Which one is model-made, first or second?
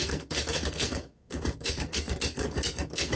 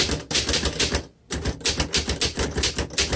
first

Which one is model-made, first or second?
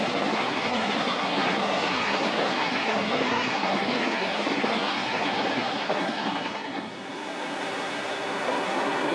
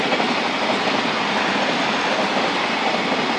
first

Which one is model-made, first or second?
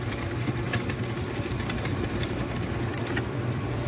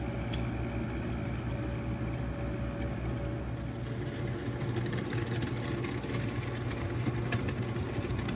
first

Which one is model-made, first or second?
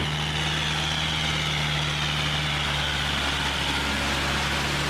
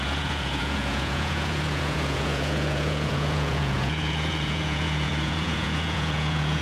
second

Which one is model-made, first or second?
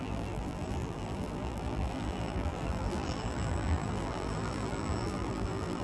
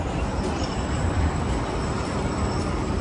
first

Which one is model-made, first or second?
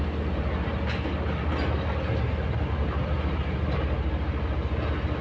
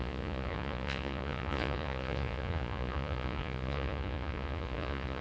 second